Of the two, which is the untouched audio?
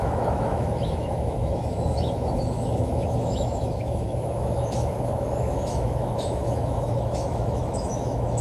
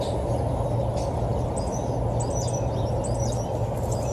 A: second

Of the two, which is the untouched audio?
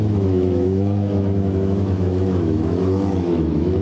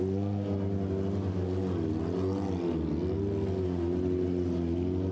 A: second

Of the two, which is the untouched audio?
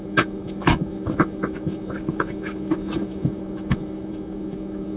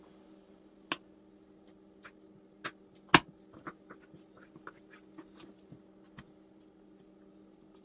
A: second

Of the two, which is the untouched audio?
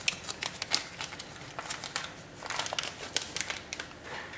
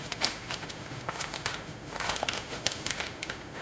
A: first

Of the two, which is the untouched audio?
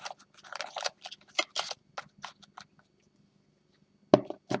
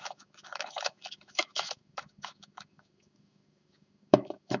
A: first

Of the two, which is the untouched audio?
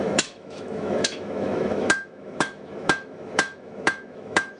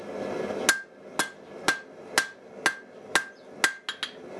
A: second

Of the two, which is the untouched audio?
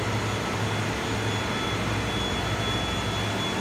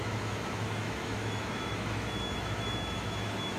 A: first